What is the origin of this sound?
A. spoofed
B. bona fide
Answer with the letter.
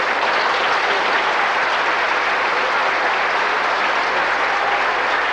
B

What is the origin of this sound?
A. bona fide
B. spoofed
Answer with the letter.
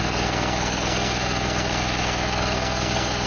B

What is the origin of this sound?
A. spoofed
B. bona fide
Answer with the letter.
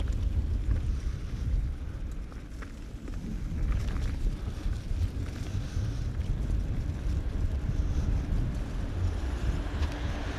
B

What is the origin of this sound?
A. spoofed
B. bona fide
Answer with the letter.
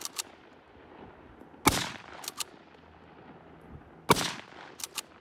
B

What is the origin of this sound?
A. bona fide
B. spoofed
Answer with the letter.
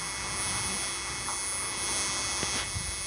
A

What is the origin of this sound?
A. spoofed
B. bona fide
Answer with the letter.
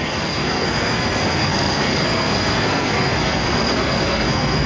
A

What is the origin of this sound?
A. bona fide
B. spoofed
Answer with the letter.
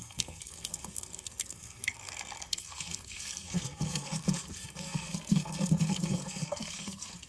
B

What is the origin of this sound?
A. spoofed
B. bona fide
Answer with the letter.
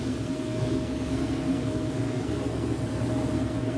A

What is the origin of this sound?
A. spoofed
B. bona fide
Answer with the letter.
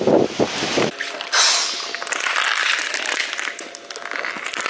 B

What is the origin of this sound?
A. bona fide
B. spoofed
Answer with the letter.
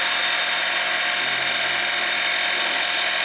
A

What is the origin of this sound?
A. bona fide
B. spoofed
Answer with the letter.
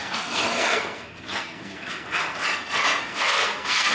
B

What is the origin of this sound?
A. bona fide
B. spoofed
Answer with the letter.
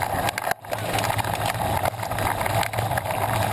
A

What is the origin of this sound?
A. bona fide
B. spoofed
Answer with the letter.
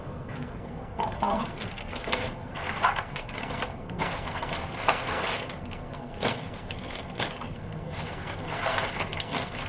B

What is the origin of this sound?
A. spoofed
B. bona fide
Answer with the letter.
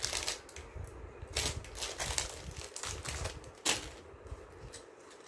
B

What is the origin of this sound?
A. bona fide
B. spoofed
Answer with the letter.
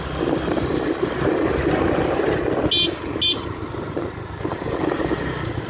A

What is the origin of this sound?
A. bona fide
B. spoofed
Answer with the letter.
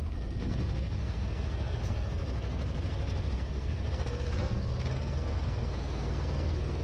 B